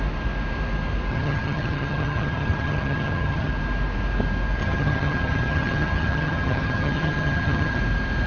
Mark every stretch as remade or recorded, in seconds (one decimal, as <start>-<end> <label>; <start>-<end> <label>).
0.0-1.1 recorded; 1.1-3.5 remade; 3.5-4.6 recorded; 4.6-7.8 remade; 7.8-8.3 recorded